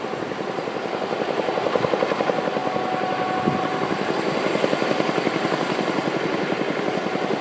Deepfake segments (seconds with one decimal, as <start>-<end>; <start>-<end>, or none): none